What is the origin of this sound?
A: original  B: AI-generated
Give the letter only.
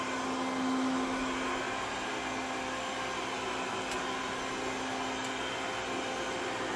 A